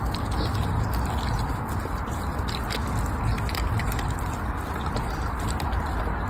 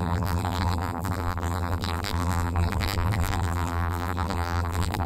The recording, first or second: first